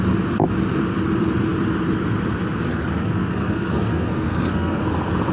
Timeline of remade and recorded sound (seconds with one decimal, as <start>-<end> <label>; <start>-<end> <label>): 0.0-2.7 recorded; 2.7-4.8 remade; 4.8-5.3 recorded